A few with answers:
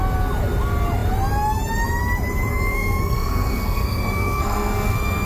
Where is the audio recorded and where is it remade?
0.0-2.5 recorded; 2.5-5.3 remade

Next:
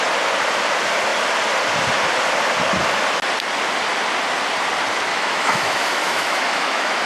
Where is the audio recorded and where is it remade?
0.0-5.1 recorded; 5.1-7.1 remade